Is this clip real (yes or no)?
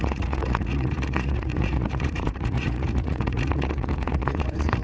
no